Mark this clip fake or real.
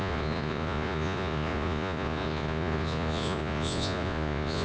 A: fake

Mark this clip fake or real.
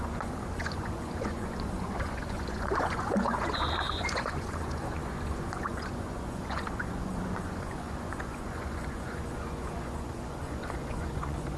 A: fake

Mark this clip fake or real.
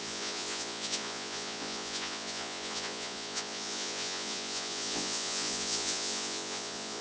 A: fake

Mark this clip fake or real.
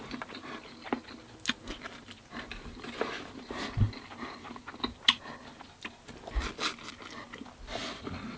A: real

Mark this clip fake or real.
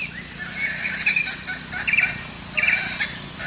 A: real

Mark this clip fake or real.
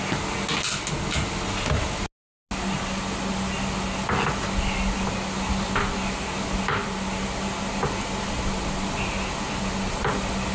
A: real